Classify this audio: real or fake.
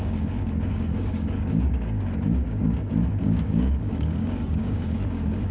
fake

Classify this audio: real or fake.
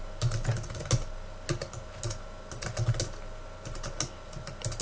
real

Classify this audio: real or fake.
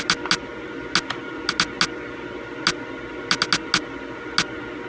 real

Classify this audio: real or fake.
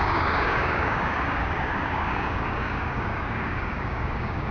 fake